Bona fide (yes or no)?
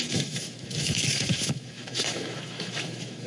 no